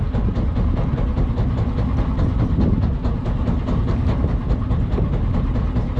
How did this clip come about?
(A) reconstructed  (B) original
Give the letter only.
B